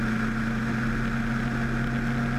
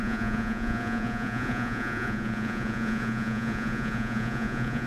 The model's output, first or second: second